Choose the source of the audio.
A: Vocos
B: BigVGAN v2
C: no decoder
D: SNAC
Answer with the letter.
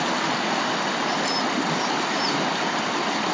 C